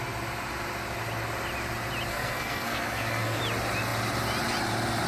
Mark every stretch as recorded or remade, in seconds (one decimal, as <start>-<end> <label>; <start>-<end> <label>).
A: 0.0-2.1 recorded; 2.1-3.4 remade; 3.4-5.1 recorded